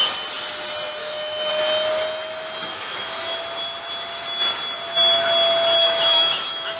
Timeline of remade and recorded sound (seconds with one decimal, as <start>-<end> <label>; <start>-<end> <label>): 0.0-1.0 recorded; 1.0-1.5 remade; 1.5-2.7 recorded; 2.7-3.4 remade; 3.4-5.8 recorded; 5.8-6.8 remade